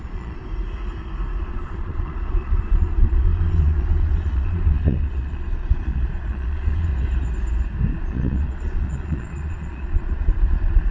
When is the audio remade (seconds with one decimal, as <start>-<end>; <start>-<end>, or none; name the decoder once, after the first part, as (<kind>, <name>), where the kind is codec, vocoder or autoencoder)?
0.0-0.4 (vocoder, Vocos); 1.4-6.9; 8.0-10.9

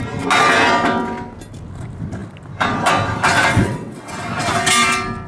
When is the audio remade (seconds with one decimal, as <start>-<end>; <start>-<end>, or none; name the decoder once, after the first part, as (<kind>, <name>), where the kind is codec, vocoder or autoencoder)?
3.5-4.1 (vocoder, WaveNeXt)

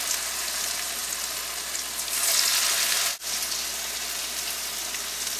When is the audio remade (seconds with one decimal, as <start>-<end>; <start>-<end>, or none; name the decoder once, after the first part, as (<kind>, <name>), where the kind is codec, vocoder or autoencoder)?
none

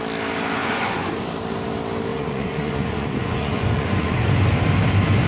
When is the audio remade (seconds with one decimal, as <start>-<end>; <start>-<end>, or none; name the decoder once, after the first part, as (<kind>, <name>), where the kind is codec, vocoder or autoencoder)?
0.6-1.1 (vocoder, Vocos); 2.1-4.3

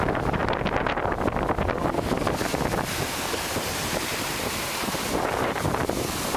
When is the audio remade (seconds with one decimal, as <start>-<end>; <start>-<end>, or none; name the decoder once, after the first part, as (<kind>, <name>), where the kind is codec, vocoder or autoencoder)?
0.0-0.4 (vocoder, BigVGAN v2); 3.3-6.4

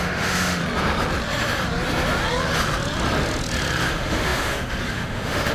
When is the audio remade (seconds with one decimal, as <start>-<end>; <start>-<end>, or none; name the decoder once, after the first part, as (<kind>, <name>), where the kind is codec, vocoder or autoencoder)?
0.0-0.6 (autoencoder, DAC-VAE); 3.9-5.5

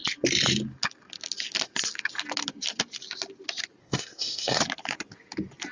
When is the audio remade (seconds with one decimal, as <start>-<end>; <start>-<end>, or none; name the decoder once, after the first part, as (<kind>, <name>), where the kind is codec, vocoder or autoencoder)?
3.8-4.6 (codec, SNAC)